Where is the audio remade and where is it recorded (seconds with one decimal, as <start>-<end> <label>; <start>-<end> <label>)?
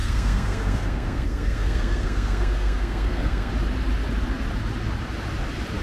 0.0-3.5 remade; 3.5-5.8 recorded